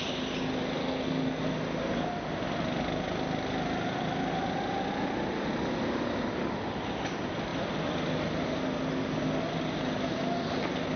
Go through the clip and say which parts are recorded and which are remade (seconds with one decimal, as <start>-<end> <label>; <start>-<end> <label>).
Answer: 0.0-0.8 recorded; 0.8-1.4 remade; 1.4-11.0 recorded